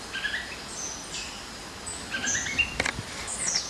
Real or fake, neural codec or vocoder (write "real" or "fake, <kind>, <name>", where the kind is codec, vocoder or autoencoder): real